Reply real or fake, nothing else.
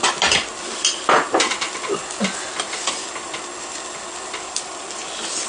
real